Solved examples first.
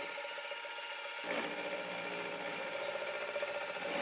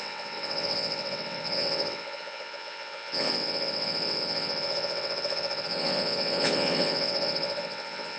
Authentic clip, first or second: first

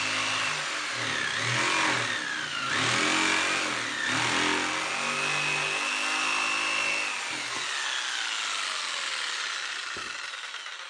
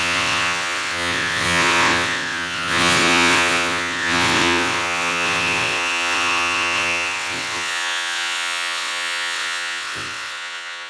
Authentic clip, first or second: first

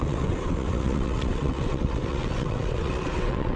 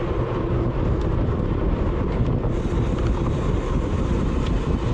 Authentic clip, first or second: second